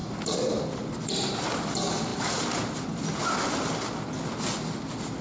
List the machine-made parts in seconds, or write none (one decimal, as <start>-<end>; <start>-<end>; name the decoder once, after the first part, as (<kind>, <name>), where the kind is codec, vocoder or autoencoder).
0.0-1.0 (vocoder, BigVGAN v2); 2.1-3.2